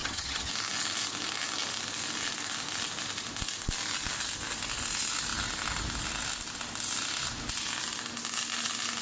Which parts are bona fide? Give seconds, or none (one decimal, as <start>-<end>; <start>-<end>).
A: 0.5-9.0